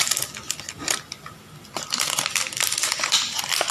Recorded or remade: recorded